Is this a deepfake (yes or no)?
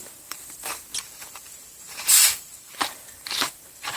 yes